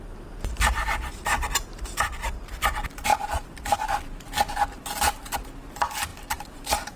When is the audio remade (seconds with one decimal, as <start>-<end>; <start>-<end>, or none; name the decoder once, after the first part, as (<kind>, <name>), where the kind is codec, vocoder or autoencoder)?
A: 0.0-7.0 (vocoder, BigVGAN v2)